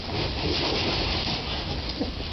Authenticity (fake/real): fake